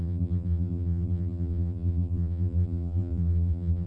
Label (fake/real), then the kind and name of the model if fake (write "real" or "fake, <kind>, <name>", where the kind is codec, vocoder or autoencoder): fake, vocoder, BigVGAN v2